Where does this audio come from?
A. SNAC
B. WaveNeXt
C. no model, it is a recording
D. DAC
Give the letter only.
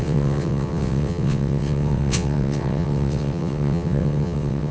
B